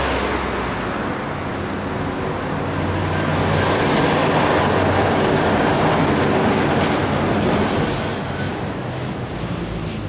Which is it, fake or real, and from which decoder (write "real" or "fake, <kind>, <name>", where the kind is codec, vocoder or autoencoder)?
real